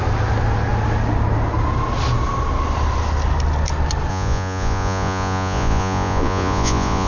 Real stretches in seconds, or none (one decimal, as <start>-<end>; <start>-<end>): 0.0-4.1